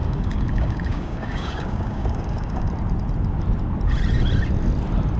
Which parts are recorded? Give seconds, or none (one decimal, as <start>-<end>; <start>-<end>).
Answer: 2.7-5.2